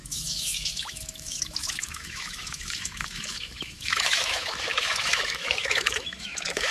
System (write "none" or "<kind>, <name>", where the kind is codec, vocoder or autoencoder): autoencoder, DAC-VAE